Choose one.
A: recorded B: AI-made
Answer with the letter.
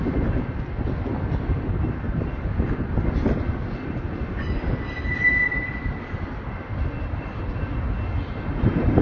A